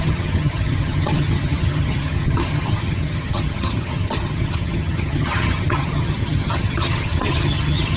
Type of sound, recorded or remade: remade